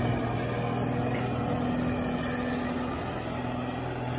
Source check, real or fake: real